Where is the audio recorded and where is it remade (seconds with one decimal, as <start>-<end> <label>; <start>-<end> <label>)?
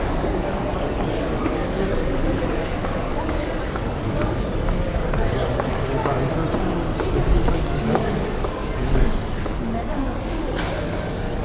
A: 0.0-6.1 remade; 6.1-7.3 recorded; 7.3-11.4 remade